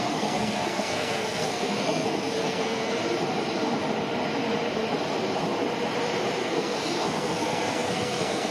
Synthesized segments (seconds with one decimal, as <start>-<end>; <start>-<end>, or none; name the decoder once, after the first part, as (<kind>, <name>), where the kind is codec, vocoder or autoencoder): 0.0-3.0 (codec, SNAC); 6.4-8.5